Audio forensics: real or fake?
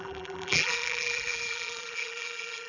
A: fake